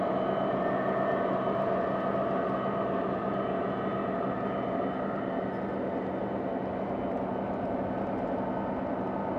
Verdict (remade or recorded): recorded